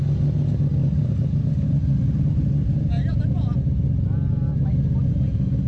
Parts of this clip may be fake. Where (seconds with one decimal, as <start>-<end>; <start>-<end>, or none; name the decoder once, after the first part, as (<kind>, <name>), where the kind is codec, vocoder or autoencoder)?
0.8-3.6 (vocoder, BigVGAN v2)